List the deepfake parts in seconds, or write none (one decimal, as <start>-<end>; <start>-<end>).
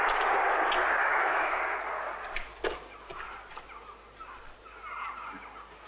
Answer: 1.0-1.6